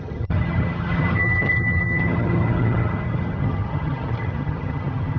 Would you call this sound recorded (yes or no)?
no